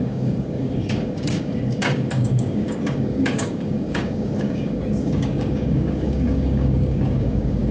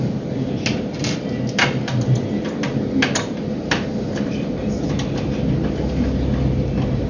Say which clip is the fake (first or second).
first